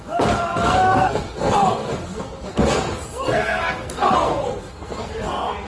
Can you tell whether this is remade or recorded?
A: remade